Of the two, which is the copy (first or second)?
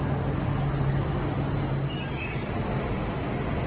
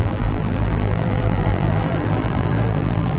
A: second